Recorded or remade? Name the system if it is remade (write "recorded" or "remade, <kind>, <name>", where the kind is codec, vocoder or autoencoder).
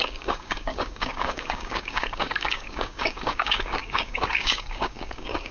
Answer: remade, codec, DAC